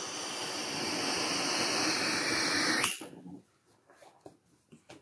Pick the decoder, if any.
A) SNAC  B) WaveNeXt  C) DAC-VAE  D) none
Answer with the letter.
D